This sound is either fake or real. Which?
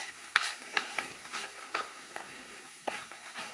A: fake